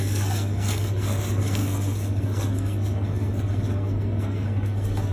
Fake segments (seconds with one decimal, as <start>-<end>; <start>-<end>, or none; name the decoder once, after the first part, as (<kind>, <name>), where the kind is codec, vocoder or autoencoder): 0.0-5.1 (codec, SNAC)